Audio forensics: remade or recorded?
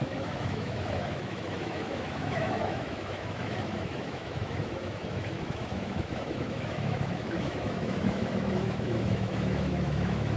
remade